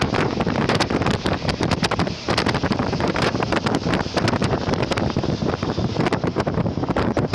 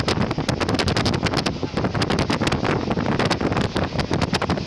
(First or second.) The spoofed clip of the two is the first